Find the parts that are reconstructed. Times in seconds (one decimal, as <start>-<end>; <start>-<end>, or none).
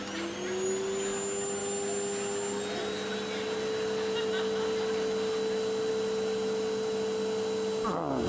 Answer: none